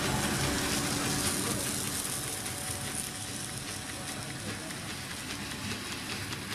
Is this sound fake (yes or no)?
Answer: no